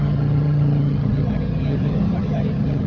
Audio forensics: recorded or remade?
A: remade